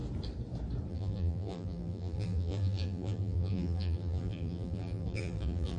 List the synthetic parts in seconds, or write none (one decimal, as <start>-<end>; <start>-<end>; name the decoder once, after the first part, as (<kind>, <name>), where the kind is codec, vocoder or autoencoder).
0.9-5.8 (vocoder, BigVGAN v2)